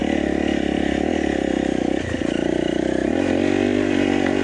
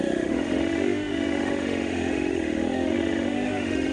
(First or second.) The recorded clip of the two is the first